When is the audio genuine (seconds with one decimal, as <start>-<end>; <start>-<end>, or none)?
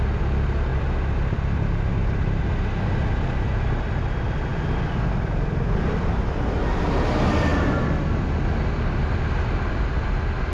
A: 0.0-10.5